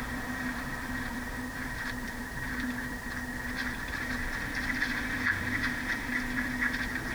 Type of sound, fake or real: fake